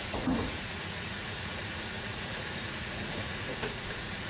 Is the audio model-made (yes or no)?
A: yes